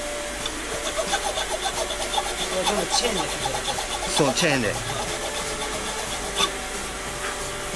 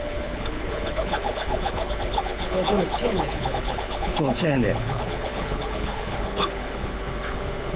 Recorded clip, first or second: first